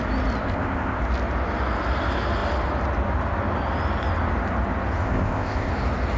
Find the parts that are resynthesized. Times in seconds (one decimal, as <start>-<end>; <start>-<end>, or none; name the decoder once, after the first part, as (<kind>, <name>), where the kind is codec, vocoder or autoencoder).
0.4-1.0 (codec, ZipCodec); 5.0-5.7